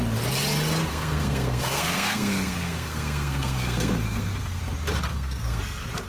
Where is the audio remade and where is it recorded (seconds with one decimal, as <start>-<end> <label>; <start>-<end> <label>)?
0.0-0.9 recorded; 0.9-4.6 remade; 4.6-5.1 recorded; 5.1-5.6 remade; 5.6-6.1 recorded